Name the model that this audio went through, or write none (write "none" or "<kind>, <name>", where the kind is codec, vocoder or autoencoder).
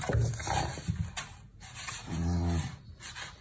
none